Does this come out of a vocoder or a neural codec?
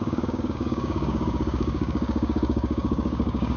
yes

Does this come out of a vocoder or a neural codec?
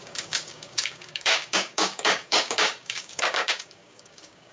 yes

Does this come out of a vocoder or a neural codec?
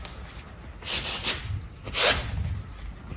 no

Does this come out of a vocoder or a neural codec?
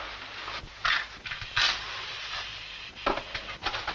no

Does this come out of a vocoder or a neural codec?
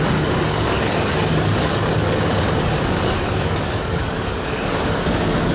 yes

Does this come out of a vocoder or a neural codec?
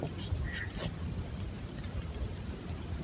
no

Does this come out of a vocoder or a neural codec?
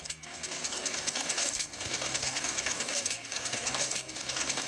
yes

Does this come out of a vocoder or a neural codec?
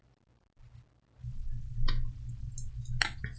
no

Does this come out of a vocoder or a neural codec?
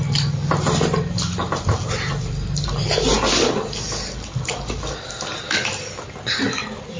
no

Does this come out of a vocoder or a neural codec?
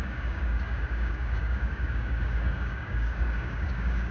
yes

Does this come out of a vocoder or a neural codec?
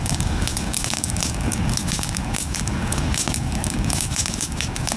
yes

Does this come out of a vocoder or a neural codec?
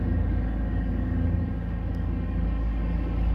yes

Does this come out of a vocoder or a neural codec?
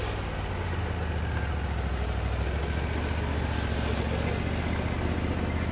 no